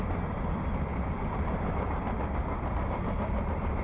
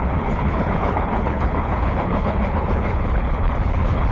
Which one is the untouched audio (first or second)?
first